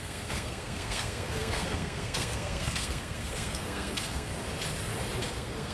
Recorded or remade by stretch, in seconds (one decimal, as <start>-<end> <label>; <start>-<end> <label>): 0.0-4.3 remade; 4.3-5.3 recorded; 5.3-5.7 remade